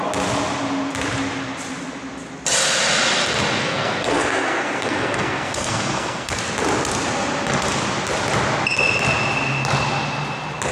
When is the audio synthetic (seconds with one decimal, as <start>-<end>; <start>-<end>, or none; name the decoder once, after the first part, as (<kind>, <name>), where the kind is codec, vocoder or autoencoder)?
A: 3.6-6.4 (codec, SNAC)